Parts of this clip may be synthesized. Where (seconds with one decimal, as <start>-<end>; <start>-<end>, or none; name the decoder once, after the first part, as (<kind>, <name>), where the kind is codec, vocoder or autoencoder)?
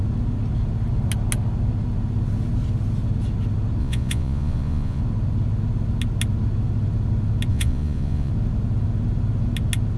3.8-5.0 (vocoder, Vocos); 7.5-8.3